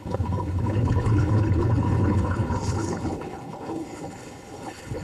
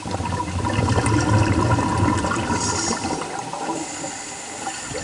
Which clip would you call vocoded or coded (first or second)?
first